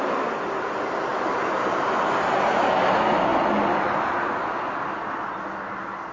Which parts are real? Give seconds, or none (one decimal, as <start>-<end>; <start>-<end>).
0.0-1.1; 2.8-6.1